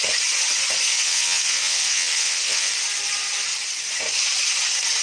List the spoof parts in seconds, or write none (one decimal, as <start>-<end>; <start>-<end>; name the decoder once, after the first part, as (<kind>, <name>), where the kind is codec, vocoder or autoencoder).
0.9-2.7 (vocoder, WaveNeXt)